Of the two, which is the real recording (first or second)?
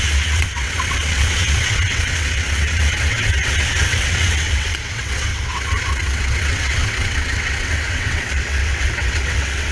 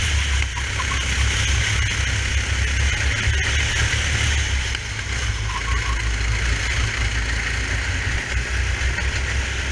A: second